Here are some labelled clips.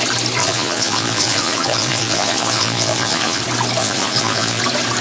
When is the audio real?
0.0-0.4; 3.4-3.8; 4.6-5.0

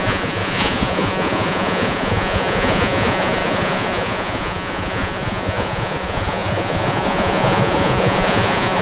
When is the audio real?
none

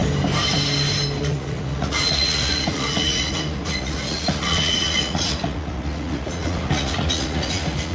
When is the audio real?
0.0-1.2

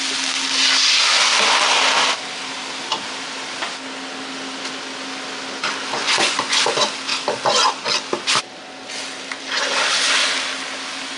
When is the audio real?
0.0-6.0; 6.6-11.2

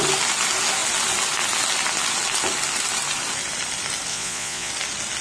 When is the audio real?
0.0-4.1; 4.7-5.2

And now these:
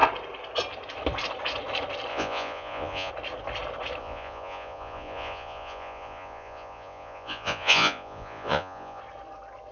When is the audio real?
0.0-2.1; 3.1-4.0; 9.0-9.7